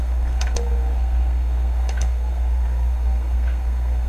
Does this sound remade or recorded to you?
remade